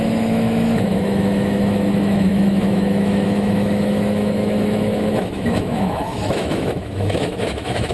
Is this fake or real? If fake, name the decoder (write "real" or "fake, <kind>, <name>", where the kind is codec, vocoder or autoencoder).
fake, autoencoder, DAC-VAE